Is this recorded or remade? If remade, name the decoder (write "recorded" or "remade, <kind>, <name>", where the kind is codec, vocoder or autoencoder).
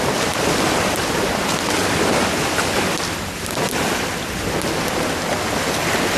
recorded